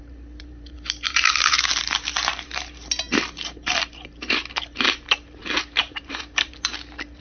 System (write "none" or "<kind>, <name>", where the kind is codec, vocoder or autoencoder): vocoder, BigVGAN v2